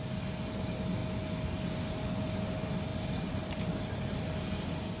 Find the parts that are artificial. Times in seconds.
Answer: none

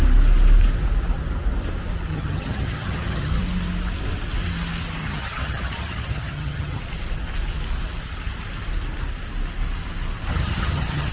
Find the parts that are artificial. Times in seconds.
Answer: 2.1-3.4 (vocoder, HiFi-GAN); 5.0-6.8; 10.3-11.1

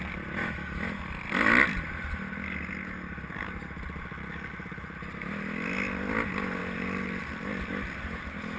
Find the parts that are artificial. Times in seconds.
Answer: 0.4-1.0 (autoencoder, DAC-VAE)

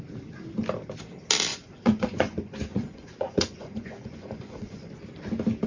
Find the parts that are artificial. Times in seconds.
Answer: 1.5-4.9 (vocoder, Vocos)

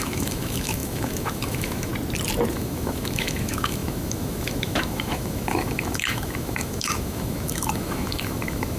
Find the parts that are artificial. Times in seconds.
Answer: 0.0-1.9 (autoencoder, DAC-VAE); 2.5-8.8

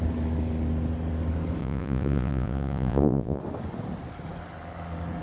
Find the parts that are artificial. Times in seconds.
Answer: 1.6-3.4 (vocoder, Vocos)